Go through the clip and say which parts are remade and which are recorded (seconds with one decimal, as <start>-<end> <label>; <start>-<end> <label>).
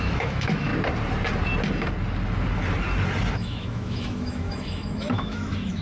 0.0-0.7 remade; 0.7-3.3 recorded; 3.3-5.8 remade